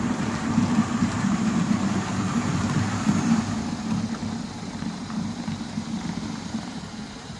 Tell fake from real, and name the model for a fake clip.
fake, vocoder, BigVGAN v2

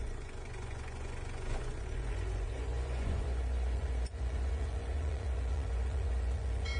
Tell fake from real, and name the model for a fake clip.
fake, vocoder, Vocos